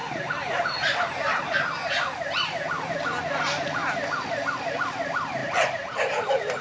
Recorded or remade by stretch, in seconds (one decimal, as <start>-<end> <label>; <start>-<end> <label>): 0.0-6.6 recorded

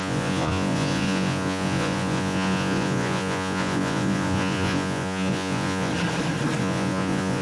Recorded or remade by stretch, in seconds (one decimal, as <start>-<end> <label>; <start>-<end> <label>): 0.0-5.9 remade; 5.9-6.6 recorded; 6.6-7.4 remade